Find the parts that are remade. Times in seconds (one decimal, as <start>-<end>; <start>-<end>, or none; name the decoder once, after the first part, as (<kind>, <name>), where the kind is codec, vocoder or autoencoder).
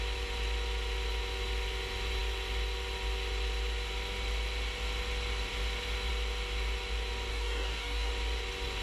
7.3-8.1 (codec, DAC)